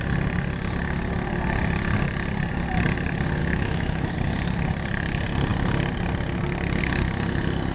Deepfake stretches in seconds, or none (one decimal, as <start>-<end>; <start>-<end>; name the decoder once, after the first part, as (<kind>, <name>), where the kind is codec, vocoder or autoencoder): 3.4-4.1 (autoencoder, DAC-VAE)